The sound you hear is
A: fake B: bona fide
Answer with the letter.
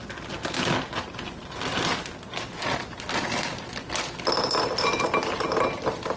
B